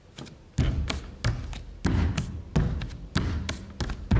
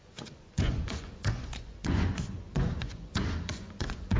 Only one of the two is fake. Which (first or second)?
second